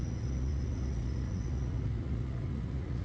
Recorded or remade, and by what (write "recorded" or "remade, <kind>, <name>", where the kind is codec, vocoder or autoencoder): remade, vocoder, Vocos